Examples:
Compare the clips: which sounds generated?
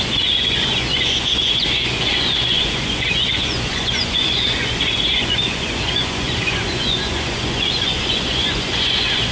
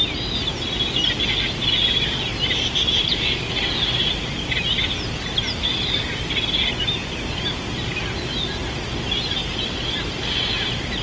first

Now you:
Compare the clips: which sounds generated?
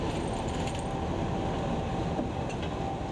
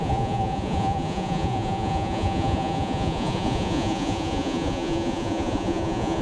second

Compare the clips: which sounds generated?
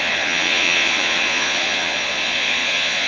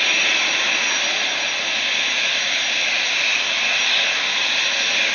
first